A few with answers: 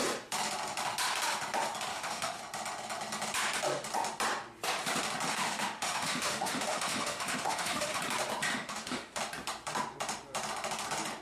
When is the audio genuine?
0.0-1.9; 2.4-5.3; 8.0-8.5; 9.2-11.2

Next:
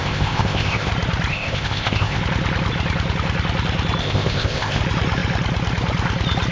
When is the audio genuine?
0.9-1.3; 2.2-4.0; 4.8-6.5